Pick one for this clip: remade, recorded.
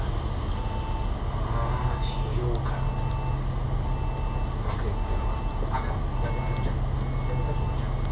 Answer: recorded